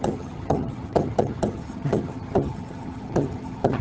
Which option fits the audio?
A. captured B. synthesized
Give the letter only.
B